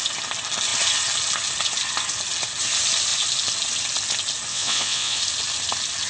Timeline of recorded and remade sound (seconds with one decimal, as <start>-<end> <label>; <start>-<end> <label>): 0.0-4.5 recorded; 4.5-5.2 remade; 5.2-6.1 recorded